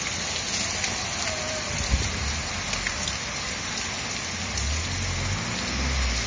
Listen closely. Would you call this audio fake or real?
real